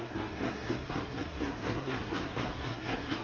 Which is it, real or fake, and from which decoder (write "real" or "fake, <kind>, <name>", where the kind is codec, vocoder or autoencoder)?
fake, codec, SNAC